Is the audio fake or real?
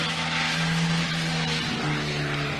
real